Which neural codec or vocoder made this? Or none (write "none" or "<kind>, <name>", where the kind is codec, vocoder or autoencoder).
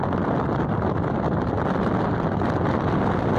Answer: none